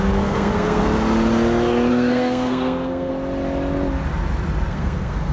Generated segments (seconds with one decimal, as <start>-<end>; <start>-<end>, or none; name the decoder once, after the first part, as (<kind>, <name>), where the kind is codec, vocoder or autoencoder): 0.0-0.8 (codec, SNAC); 1.9-3.1; 4.7-5.3